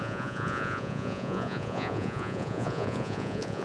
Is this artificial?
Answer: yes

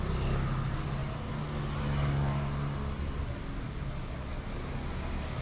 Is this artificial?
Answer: no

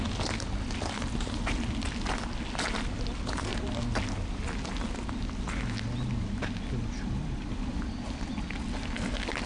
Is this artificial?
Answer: no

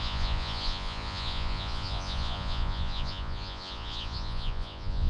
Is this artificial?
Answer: yes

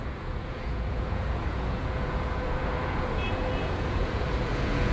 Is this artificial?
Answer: yes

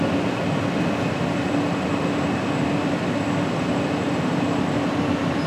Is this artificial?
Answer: no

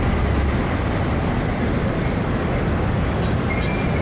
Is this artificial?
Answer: no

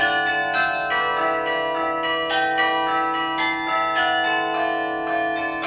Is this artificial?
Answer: no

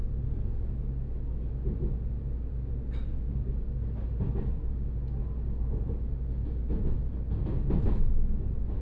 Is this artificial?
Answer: no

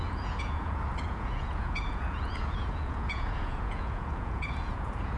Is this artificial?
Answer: yes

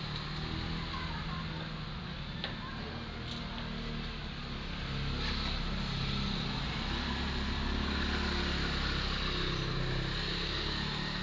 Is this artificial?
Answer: no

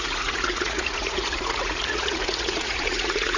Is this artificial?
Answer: yes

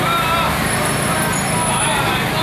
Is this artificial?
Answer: no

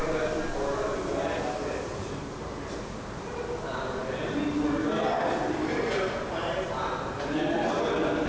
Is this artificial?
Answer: no